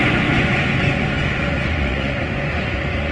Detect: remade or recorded remade